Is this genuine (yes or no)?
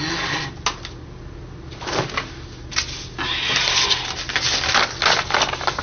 yes